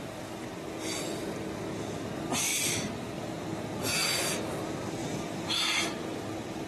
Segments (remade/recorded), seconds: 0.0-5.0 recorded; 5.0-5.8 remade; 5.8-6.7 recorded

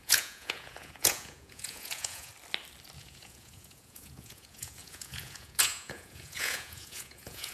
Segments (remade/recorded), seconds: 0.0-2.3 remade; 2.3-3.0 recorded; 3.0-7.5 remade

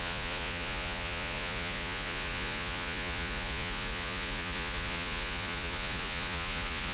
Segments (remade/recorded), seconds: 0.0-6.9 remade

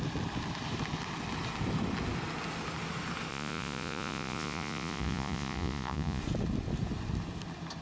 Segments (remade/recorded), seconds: 0.0-3.3 recorded; 3.3-6.2 remade; 6.2-7.8 recorded